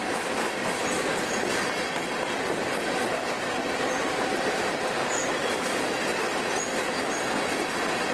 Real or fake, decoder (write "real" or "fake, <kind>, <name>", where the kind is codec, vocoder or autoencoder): real